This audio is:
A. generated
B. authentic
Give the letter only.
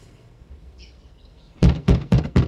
A